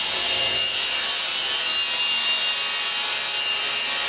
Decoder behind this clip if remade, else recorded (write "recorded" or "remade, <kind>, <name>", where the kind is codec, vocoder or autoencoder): recorded